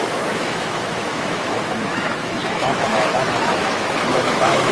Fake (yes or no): yes